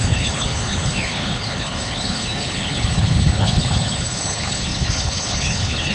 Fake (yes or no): yes